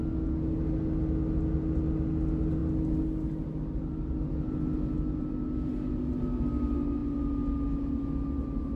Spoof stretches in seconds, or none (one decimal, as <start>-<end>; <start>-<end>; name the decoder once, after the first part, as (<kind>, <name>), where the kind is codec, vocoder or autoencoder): none